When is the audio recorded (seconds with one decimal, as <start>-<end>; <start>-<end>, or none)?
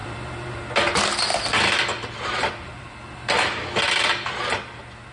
0.6-1.3; 4.4-5.1